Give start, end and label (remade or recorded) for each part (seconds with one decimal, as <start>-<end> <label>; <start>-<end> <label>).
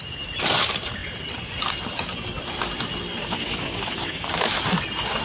0.0-3.2 recorded; 3.2-4.2 remade; 4.2-5.2 recorded